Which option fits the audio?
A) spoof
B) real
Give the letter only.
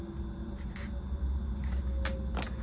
B